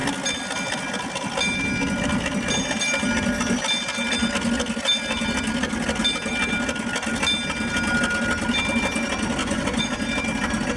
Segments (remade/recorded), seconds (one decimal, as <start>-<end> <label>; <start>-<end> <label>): 0.0-9.4 recorded; 9.4-10.0 remade; 10.0-10.8 recorded